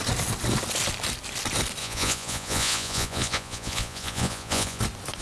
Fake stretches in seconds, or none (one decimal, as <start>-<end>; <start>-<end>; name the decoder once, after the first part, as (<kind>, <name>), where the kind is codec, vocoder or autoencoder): 1.8-4.8 (vocoder, Vocos)